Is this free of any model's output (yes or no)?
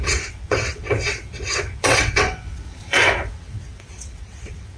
no